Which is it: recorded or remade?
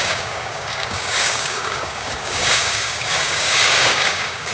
remade